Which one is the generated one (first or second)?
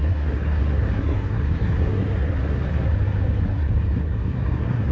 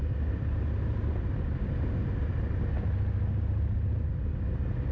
first